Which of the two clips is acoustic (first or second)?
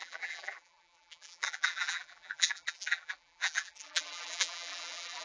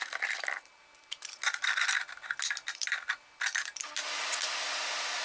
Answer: second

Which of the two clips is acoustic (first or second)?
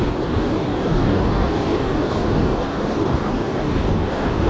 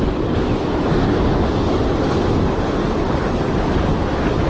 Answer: second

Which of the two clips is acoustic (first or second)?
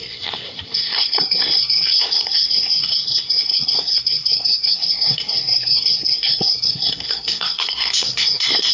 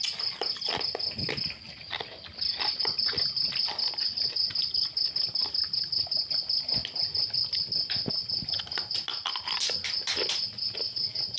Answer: second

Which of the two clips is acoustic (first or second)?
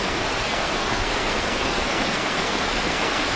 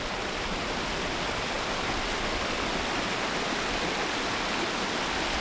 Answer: second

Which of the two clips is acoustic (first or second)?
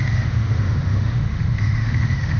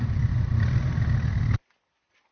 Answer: second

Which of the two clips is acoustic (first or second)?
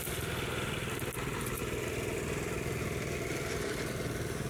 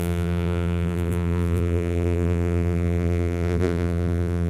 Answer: first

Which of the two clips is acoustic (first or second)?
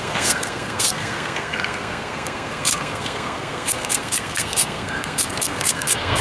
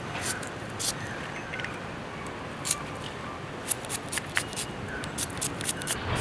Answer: second